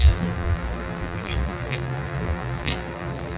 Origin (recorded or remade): remade